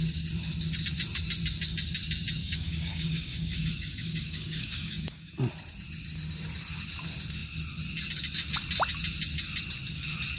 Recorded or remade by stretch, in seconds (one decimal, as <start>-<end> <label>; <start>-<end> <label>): 0.0-2.4 recorded; 2.4-5.3 remade; 5.3-10.4 recorded